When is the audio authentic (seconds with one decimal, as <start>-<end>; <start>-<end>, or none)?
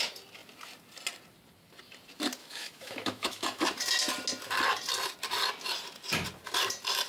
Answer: 0.0-2.4; 3.6-7.1